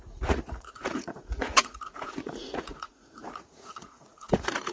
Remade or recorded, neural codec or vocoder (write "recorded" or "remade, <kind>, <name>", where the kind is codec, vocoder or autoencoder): remade, vocoder, Vocos